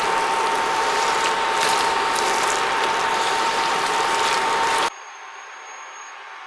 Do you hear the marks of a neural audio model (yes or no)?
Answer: yes